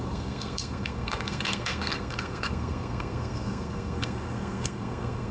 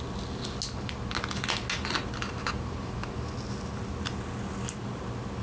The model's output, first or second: first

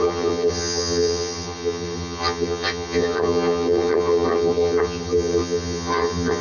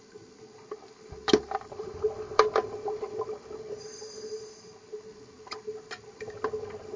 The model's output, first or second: first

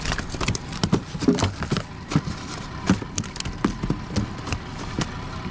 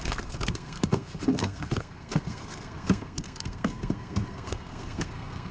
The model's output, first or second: second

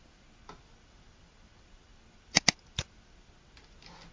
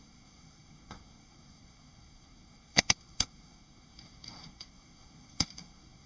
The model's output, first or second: second